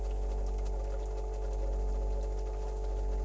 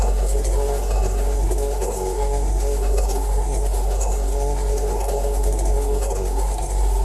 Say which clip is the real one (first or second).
first